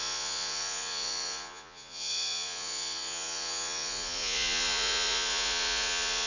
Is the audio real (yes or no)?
no